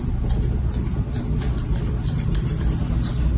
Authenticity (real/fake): real